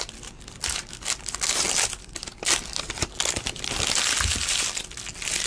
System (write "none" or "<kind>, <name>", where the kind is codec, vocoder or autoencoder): none